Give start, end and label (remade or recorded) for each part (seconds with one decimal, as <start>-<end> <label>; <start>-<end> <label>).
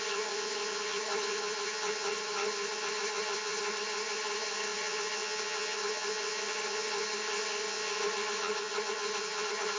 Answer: 0.0-9.8 remade